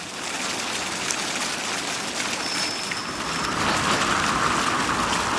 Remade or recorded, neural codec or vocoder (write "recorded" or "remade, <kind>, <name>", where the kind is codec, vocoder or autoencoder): recorded